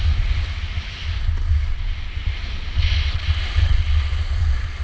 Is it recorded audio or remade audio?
recorded